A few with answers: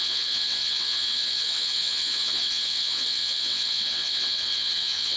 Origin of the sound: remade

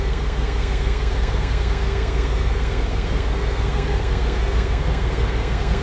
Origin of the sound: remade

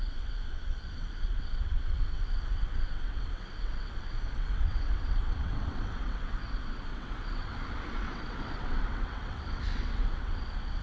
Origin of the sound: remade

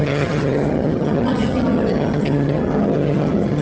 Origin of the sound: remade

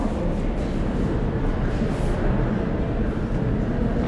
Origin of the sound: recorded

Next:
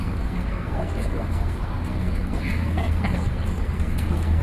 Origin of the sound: remade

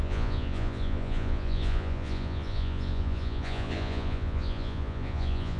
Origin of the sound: remade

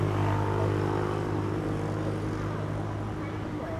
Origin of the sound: recorded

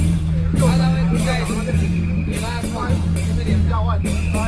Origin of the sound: remade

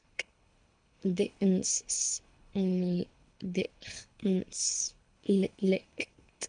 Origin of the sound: remade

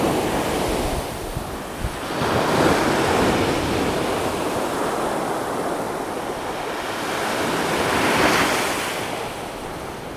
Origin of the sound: recorded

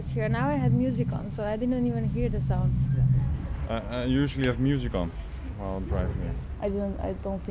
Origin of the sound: recorded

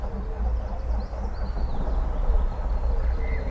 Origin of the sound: recorded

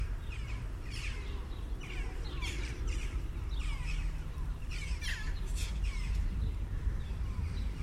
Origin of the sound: remade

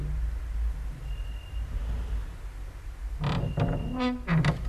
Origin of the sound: recorded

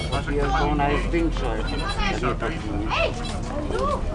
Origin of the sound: recorded